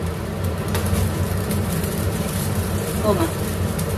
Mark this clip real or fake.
fake